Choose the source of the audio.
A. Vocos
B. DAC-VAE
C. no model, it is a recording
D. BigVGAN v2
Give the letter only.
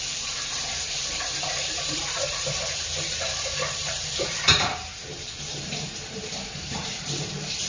D